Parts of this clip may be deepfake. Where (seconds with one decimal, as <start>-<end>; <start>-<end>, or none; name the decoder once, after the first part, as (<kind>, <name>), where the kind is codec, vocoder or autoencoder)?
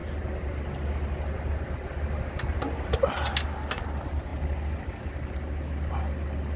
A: none